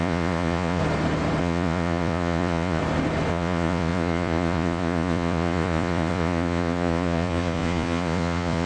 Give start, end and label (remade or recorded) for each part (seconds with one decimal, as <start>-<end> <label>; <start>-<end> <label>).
0.0-0.8 remade; 0.8-1.4 recorded; 1.4-2.8 remade; 2.8-3.3 recorded; 3.3-8.7 remade